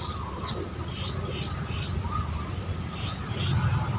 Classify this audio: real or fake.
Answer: real